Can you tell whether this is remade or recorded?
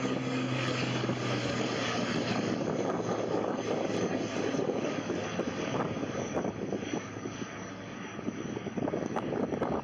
remade